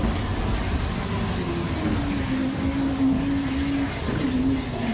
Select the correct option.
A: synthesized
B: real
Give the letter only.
B